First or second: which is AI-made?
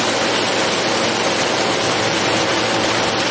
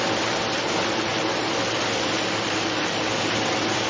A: second